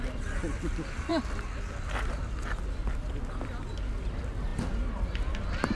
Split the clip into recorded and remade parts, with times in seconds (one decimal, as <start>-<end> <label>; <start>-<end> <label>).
0.0-5.7 recorded